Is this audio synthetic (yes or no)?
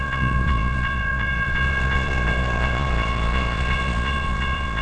yes